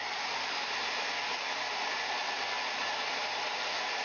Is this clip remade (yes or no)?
yes